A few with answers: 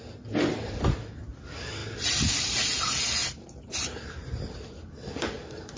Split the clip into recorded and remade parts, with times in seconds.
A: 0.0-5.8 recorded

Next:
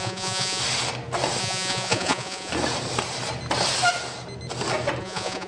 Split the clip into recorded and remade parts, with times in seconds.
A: 0.0-0.6 remade; 0.6-1.4 recorded; 1.4-2.5 remade; 2.5-5.0 recorded; 5.0-5.5 remade

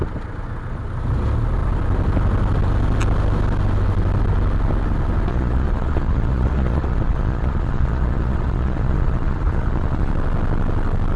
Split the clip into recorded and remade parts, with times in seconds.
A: 0.0-5.3 recorded; 5.3-10.1 remade; 10.1-11.2 recorded

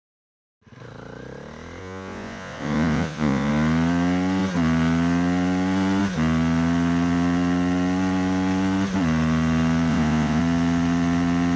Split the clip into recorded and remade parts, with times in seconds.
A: 0.0-1.8 recorded; 1.8-3.5 remade; 3.5-9.9 recorded; 9.9-10.4 remade; 10.4-11.6 recorded

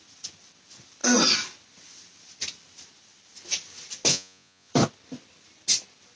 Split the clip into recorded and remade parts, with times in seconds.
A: 0.0-4.1 recorded; 4.1-4.7 remade; 4.7-6.2 recorded

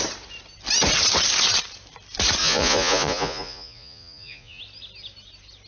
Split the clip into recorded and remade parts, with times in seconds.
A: 0.0-2.4 recorded; 2.4-4.6 remade; 4.6-5.7 recorded

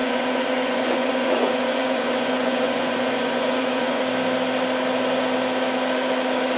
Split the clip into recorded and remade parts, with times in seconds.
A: 0.0-4.0 remade; 4.0-6.6 recorded

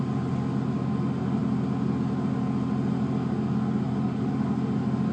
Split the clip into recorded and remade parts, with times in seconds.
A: 0.0-5.1 recorded